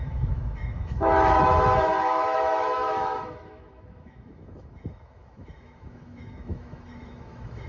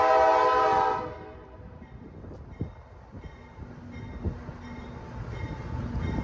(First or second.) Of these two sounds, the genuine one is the second